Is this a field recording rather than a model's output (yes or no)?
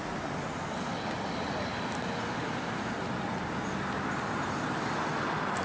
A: yes